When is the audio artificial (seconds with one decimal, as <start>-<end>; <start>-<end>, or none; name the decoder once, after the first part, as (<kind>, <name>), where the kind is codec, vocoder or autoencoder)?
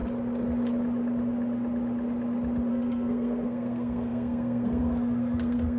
2.7-5.8 (codec, SNAC)